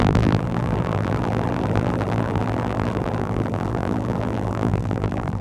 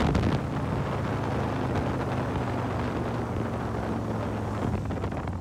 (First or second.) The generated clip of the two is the first